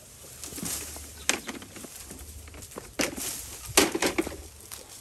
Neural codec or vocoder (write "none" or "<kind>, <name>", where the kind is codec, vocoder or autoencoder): none